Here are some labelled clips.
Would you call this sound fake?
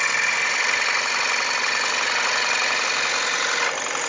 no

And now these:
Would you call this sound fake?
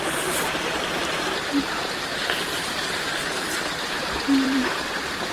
yes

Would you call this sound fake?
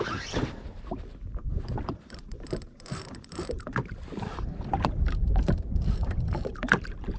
yes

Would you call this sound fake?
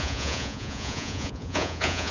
yes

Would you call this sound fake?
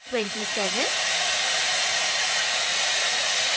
yes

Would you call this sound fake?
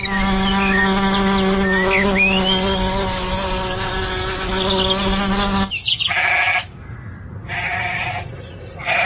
no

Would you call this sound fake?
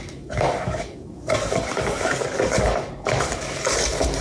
yes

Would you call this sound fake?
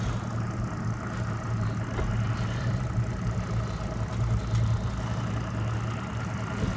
no